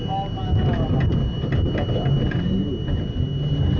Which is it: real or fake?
real